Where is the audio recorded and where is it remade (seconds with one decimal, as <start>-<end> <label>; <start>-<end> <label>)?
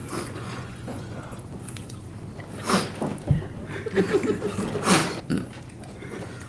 0.0-2.1 remade; 2.1-5.0 recorded; 5.0-6.5 remade